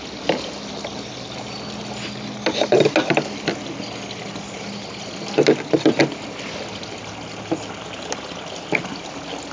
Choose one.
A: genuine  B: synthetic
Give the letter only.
A